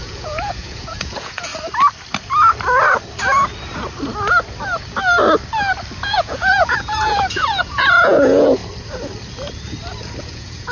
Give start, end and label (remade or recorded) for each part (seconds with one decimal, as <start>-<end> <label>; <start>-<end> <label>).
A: 0.0-1.5 remade; 1.5-6.0 recorded; 6.0-8.6 remade; 8.6-10.2 recorded; 10.2-10.7 remade